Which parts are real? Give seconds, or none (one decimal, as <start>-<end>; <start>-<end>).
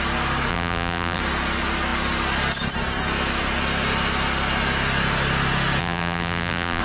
0.0-0.5; 1.2-5.8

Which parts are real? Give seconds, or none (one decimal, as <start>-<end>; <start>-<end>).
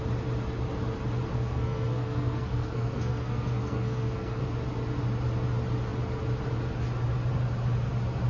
0.0-1.3; 4.4-8.3